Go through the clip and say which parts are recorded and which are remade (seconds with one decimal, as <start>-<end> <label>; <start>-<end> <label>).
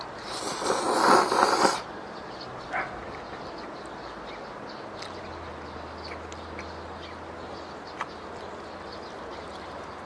0.0-10.1 recorded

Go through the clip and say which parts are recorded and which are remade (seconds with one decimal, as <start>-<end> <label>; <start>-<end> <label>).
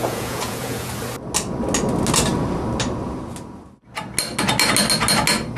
0.0-0.9 remade; 0.9-5.6 recorded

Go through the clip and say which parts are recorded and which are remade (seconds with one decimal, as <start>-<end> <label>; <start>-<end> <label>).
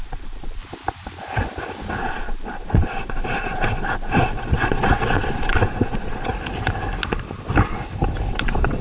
0.0-0.6 remade; 0.6-2.0 recorded; 2.0-6.3 remade; 6.3-8.3 recorded; 8.3-8.8 remade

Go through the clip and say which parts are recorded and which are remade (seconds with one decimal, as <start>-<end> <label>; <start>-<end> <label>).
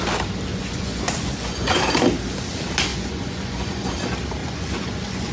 0.0-0.5 recorded; 0.5-1.8 remade; 1.8-2.9 recorded; 2.9-3.9 remade; 3.9-4.4 recorded; 4.4-5.3 remade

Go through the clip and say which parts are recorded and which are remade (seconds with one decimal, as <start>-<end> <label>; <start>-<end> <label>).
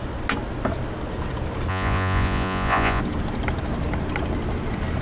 0.0-1.7 recorded; 1.7-3.0 remade; 3.0-5.0 recorded